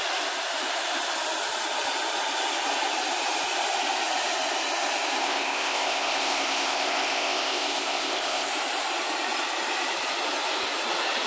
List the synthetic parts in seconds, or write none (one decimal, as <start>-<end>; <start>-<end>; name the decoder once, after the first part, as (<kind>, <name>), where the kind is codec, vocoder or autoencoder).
5.2-8.5 (codec, ZipCodec)

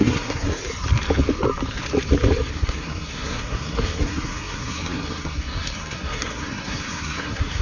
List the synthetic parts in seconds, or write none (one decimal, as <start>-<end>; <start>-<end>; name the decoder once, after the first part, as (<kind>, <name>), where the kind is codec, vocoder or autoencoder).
0.0-0.6 (codec, SNAC); 2.5-7.6

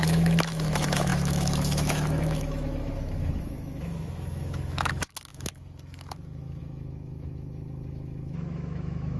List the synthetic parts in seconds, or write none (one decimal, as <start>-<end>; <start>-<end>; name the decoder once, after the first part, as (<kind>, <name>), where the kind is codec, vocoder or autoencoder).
0.0-9.2 (autoencoder, DAC-VAE)

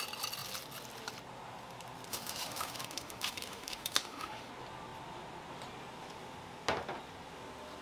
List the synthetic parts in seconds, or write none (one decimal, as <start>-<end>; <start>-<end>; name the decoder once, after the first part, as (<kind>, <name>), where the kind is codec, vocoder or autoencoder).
2.1-4.5 (autoencoder, DAC-VAE)